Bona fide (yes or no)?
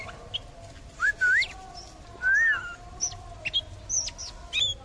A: yes